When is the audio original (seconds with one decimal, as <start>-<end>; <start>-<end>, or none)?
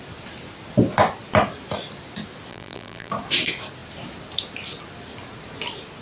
0.0-2.5; 3.1-6.0